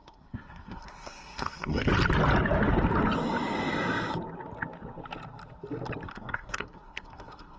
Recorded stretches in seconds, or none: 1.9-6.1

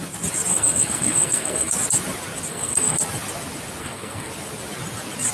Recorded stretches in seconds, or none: 0.0-0.5; 1.7-2.5; 3.0-3.8; 4.3-5.3

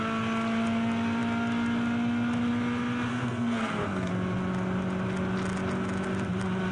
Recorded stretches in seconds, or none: 0.0-3.1; 4.1-6.7

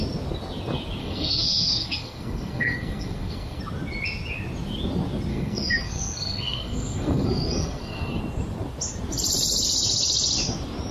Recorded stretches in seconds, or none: 0.0-1.0; 3.6-5.3; 8.2-10.9

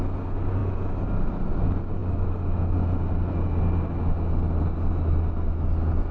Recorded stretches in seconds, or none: 0.0-6.1